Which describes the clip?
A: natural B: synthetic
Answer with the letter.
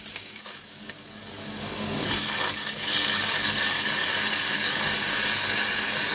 B